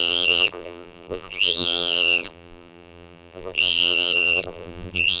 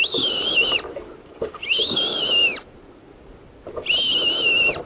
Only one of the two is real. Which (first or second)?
second